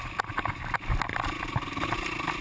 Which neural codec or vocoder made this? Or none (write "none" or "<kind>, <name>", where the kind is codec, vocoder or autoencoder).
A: none